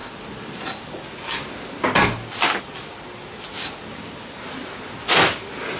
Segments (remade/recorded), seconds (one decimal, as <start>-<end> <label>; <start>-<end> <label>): 0.0-5.8 recorded